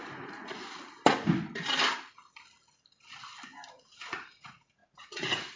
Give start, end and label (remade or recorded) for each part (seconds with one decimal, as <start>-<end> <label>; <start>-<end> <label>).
0.0-0.6 remade; 0.6-3.7 recorded; 3.7-5.6 remade